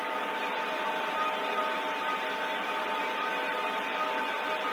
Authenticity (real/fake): real